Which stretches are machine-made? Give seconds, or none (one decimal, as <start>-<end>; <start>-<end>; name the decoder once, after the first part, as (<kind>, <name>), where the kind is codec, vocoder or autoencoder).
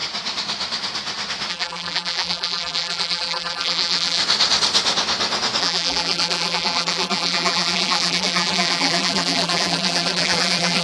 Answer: 1.5-4.2 (vocoder, BigVGAN v2); 5.6-10.8